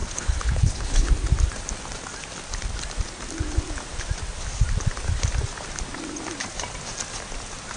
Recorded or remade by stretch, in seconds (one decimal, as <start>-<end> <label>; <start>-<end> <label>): 0.0-1.1 remade; 1.1-7.8 recorded